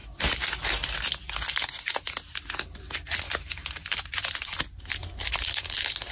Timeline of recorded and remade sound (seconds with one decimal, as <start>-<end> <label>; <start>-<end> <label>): 0.0-6.1 recorded